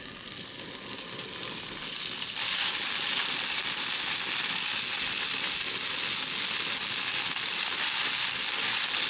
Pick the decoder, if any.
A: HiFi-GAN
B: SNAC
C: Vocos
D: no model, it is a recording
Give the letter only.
D